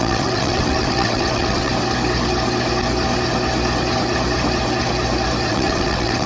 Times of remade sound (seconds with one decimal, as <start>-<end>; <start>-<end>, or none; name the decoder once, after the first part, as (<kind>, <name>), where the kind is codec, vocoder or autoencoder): 0.0-1.7 (vocoder, WaveNeXt); 5.5-6.3